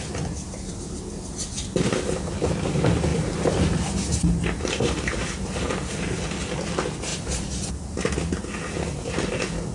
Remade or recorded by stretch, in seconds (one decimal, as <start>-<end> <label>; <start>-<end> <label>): 0.0-3.1 recorded; 3.1-5.6 remade; 5.6-7.1 recorded; 7.1-7.7 remade; 7.7-9.7 recorded